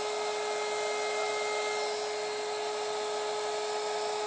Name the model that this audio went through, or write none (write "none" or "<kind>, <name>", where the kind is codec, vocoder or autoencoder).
none